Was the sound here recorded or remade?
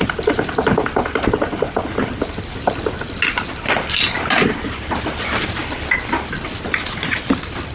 recorded